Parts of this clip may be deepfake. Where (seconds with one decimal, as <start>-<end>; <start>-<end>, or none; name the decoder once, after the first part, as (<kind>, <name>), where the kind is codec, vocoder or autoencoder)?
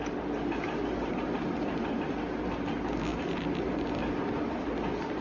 none